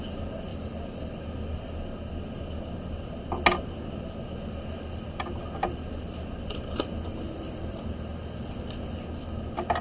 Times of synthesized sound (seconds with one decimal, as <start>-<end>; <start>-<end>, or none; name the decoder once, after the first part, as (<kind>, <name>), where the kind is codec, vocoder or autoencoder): 0.5-1.1 (vocoder, BigVGAN v2); 7.1-8.8